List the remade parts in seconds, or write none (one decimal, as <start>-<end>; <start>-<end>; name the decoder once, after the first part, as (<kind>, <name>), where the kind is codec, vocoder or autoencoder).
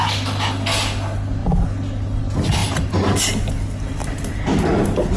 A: none